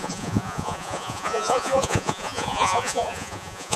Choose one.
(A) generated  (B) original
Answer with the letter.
A